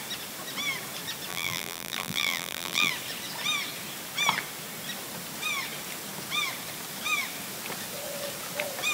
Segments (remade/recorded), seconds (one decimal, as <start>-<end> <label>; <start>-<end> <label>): 0.0-1.3 recorded; 1.3-2.9 remade; 2.9-8.9 recorded